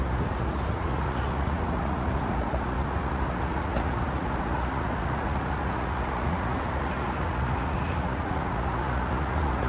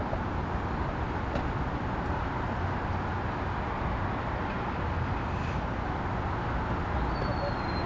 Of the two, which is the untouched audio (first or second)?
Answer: second